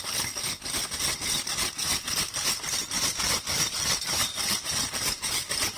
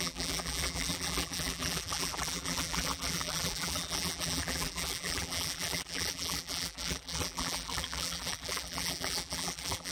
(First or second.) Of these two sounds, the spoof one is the second